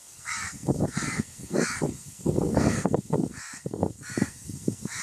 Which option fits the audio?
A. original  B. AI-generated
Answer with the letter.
B